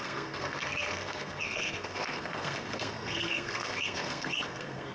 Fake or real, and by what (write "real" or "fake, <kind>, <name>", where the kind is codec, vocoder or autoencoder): fake, codec, SNAC